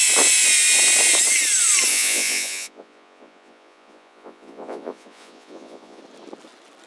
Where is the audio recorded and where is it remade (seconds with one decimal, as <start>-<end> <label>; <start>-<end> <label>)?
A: 0.0-1.9 recorded; 1.9-6.0 remade; 6.0-6.9 recorded